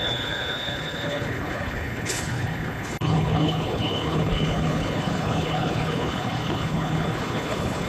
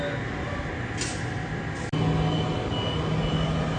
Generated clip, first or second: first